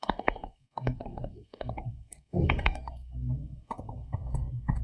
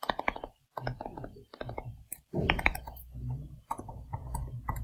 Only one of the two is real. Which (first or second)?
second